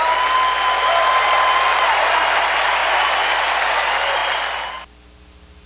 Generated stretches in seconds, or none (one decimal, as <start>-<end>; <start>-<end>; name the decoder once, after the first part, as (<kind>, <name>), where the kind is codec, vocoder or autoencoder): none